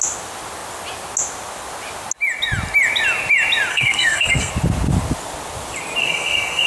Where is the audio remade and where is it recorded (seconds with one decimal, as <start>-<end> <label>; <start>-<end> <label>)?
0.0-3.7 recorded; 3.7-4.5 remade; 4.5-6.0 recorded; 6.0-6.7 remade